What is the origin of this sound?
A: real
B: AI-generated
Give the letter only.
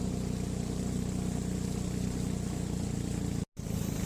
A